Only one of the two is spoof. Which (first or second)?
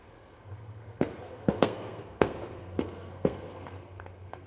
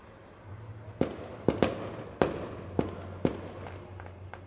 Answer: first